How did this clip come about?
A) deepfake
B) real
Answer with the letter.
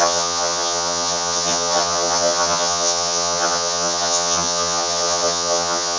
A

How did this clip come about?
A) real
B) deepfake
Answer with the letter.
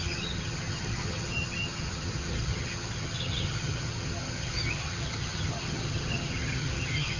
B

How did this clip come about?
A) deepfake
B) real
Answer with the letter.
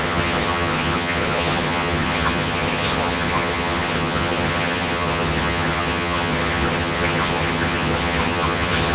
A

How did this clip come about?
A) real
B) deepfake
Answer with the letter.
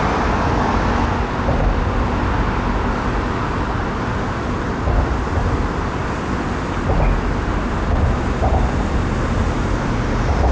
A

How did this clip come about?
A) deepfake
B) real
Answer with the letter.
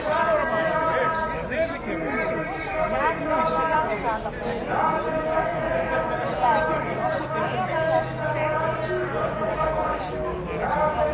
B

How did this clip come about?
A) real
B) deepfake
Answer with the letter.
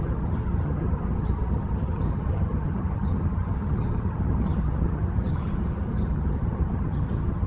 B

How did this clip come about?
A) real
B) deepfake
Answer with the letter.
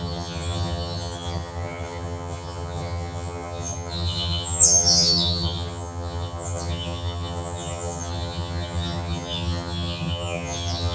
B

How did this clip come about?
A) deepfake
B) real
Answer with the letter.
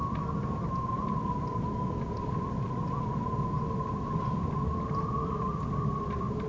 B